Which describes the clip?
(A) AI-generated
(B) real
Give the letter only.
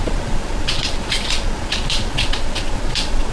A